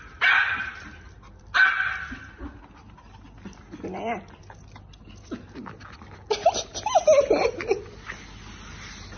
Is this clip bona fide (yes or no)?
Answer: yes